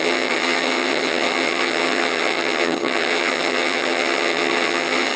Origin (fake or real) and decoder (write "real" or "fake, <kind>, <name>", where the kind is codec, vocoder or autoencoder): fake, vocoder, HiFi-GAN